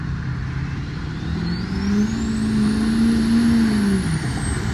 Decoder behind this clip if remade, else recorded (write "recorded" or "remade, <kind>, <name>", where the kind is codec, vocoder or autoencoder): recorded